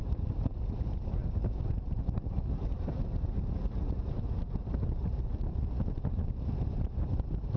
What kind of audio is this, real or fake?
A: fake